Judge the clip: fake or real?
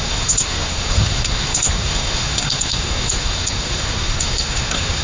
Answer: fake